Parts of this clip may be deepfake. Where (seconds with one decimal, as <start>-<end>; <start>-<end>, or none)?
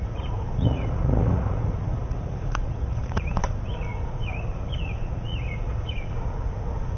0.0-7.0